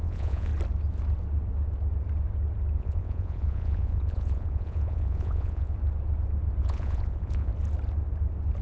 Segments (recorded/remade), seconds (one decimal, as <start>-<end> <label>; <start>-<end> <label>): 0.0-0.5 remade; 0.5-2.8 recorded; 2.8-5.7 remade; 5.7-6.6 recorded; 6.6-7.5 remade; 7.5-8.6 recorded